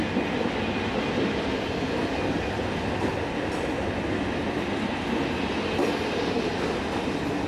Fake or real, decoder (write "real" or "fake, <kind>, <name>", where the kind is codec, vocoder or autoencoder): real